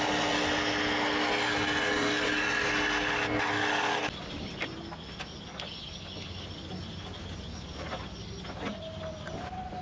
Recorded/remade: recorded